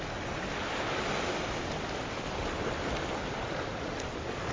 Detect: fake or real real